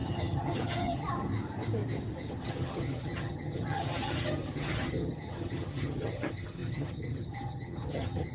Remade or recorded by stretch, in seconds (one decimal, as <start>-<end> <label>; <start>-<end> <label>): 0.0-1.3 remade; 1.3-2.3 recorded; 2.3-8.3 remade

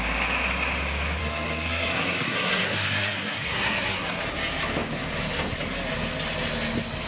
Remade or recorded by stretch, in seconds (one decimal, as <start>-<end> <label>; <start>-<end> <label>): 0.0-1.2 recorded; 1.2-4.2 remade; 4.2-7.1 recorded